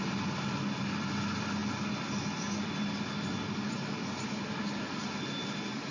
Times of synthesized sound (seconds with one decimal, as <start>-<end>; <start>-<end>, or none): none